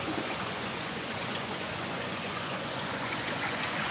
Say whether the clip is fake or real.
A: fake